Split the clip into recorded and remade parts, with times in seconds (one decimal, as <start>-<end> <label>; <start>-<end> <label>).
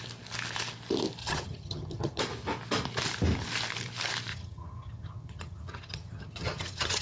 0.0-1.2 recorded; 1.2-2.2 remade; 2.2-4.3 recorded; 4.3-7.0 remade